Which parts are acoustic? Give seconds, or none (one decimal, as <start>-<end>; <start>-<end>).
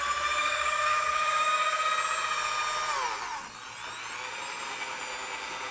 0.0-0.4; 1.9-5.7